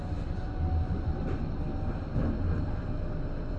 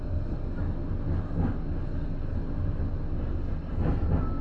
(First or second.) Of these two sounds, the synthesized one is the first